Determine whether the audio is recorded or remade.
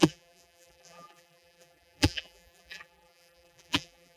remade